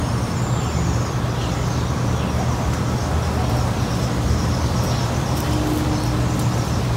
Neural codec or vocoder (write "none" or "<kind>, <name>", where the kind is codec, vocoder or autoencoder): none